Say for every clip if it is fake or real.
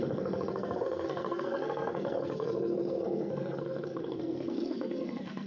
fake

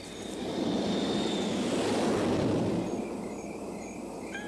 real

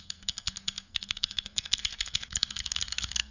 fake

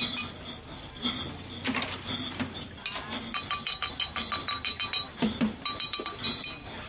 real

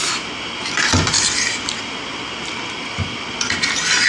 real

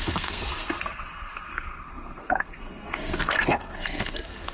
fake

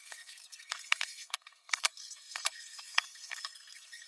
fake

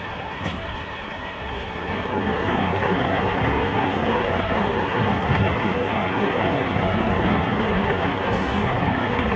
fake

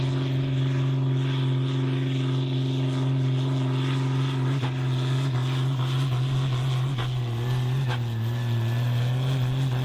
real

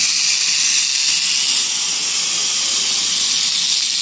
real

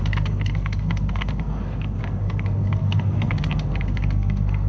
fake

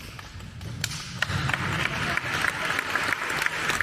real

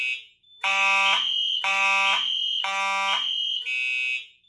real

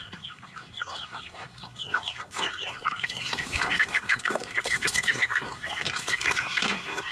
fake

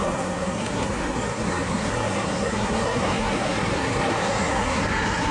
fake